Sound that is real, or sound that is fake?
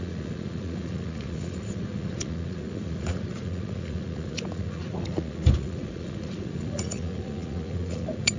fake